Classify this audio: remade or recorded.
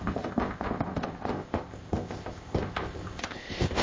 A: remade